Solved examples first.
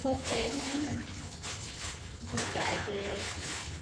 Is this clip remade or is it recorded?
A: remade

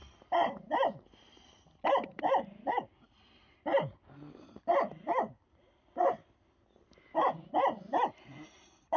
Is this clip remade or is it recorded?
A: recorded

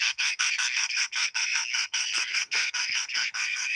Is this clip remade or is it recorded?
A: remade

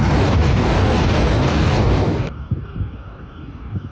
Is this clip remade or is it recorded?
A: remade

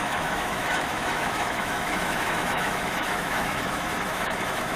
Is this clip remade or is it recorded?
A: remade